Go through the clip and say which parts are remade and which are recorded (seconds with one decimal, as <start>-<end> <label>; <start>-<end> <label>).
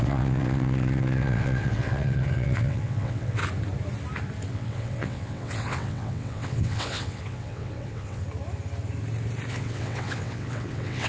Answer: 0.0-3.4 remade; 3.4-4.5 recorded; 4.5-8.2 remade; 8.2-9.5 recorded; 9.5-11.1 remade